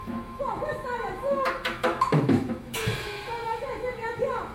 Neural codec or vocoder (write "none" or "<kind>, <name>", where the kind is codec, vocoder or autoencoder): autoencoder, DAC-VAE